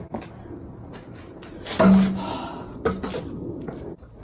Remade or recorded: recorded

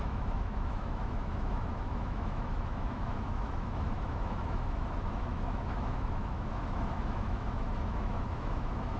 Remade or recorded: remade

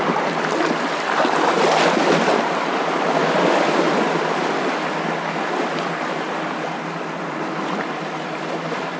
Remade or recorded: recorded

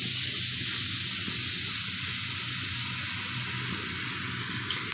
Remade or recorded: recorded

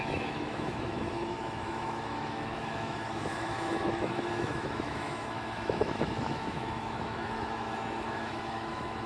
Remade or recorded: remade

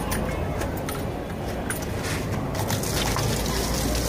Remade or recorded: recorded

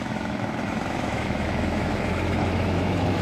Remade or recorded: remade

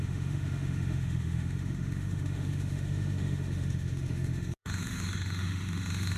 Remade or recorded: remade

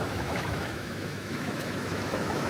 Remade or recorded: remade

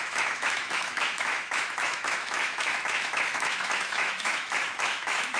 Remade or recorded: remade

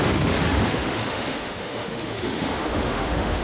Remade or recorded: remade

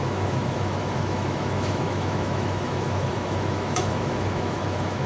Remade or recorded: remade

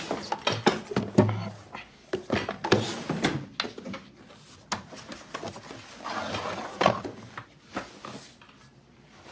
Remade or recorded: recorded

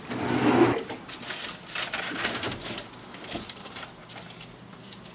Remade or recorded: recorded